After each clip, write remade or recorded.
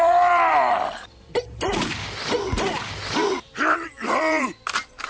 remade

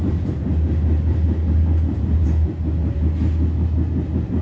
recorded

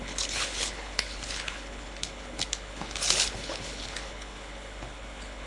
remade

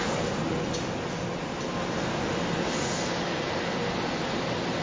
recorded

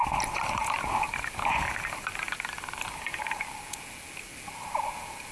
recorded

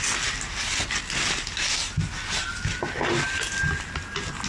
recorded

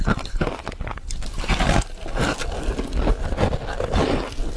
recorded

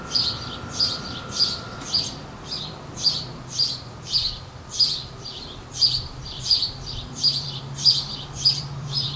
remade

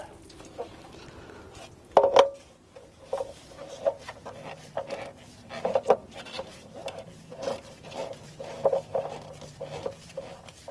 recorded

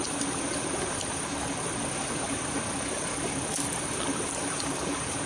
recorded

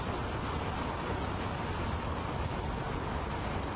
recorded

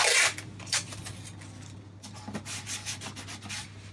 recorded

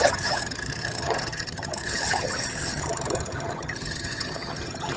remade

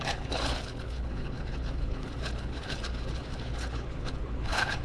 remade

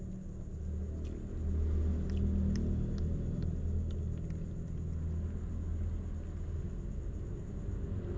recorded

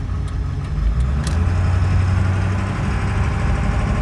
recorded